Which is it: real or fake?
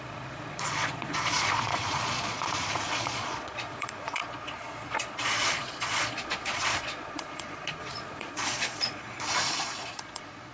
fake